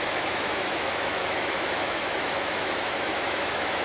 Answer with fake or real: fake